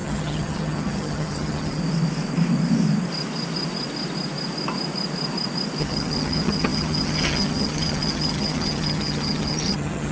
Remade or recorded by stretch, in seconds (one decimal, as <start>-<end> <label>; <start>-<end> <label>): 0.0-1.8 remade; 1.8-5.8 recorded; 5.8-10.1 remade

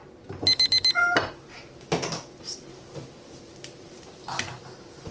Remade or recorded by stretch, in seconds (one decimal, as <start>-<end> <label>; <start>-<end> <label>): 0.0-5.1 recorded

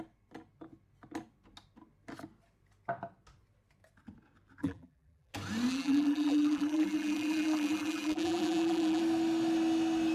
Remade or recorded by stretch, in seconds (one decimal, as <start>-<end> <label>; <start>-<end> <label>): 0.0-4.6 recorded; 4.6-5.3 remade; 5.3-5.7 recorded; 5.7-9.0 remade; 9.0-10.1 recorded

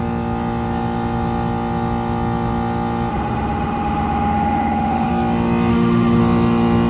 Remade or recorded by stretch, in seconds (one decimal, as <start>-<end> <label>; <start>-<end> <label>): 0.0-3.1 recorded; 3.1-5.1 remade; 5.1-5.7 recorded; 5.7-6.2 remade; 6.2-6.9 recorded

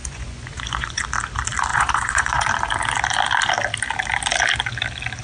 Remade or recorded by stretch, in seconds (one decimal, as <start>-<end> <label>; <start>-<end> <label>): 0.0-1.0 remade; 1.0-1.7 recorded; 1.7-2.5 remade; 2.5-5.2 recorded

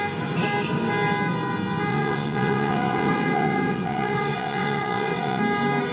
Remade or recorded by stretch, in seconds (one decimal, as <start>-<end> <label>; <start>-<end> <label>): 0.0-1.9 recorded; 1.9-5.4 remade; 5.4-5.9 recorded